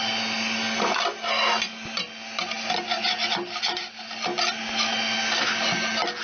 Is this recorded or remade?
recorded